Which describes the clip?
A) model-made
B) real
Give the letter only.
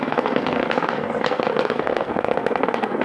A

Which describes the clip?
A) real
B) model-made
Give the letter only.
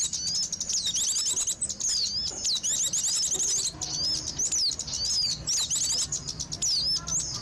A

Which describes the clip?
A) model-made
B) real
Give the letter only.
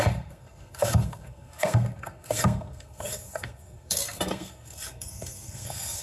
A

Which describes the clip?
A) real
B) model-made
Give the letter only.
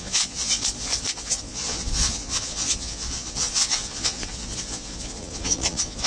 B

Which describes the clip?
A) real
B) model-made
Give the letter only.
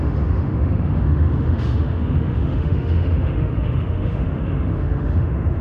B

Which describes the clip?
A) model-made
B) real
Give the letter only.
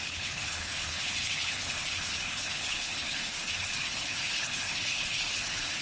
A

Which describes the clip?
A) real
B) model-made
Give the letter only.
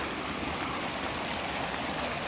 A